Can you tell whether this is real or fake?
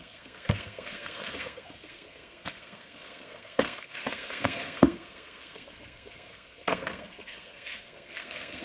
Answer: fake